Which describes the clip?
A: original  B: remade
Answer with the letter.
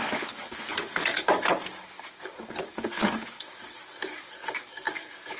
B